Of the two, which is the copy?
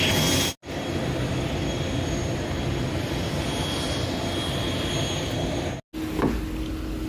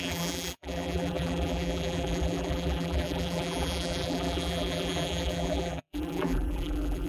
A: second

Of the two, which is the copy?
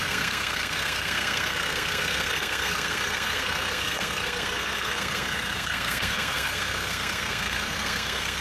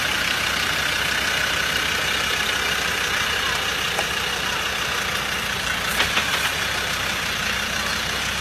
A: first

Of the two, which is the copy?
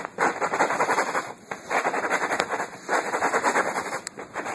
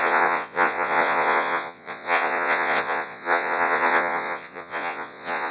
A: second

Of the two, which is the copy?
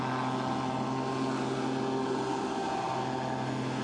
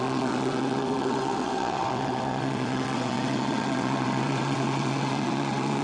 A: second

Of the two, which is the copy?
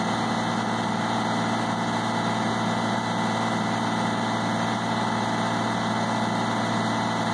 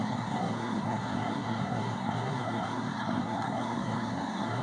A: second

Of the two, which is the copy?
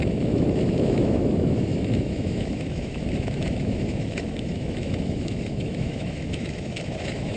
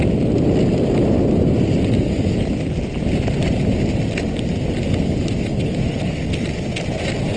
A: first